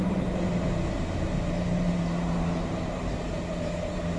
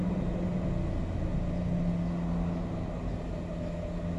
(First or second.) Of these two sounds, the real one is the second